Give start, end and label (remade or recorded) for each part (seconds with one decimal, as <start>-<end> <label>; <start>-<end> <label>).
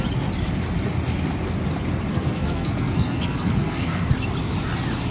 0.0-2.1 recorded; 2.1-4.1 remade; 4.1-5.1 recorded